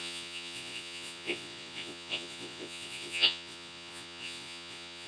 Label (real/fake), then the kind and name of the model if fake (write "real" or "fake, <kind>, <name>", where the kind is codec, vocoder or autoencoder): fake, vocoder, Vocos